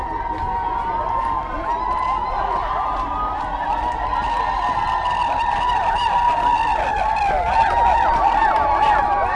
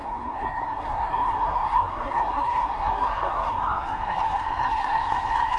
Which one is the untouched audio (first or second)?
first